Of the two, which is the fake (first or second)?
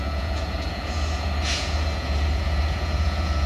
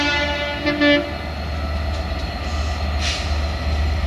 first